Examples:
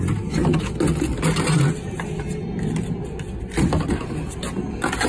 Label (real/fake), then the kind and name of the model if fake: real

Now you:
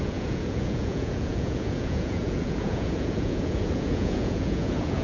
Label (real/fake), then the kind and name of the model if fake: fake, vocoder, Vocos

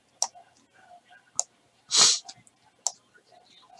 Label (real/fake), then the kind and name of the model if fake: real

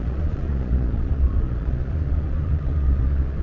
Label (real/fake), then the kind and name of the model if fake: fake, vocoder, Vocos